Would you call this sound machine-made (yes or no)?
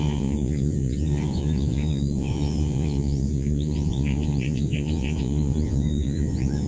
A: yes